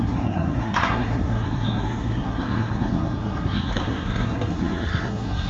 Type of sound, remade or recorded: remade